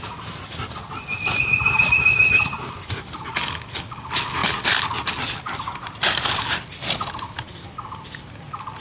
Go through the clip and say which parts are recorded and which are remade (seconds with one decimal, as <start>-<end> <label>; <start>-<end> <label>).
0.0-8.8 recorded